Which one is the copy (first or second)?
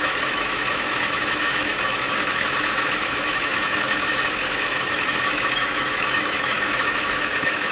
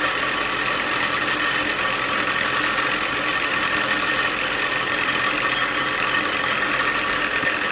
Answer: first